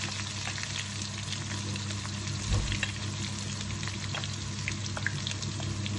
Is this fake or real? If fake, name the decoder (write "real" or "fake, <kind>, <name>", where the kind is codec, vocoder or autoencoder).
real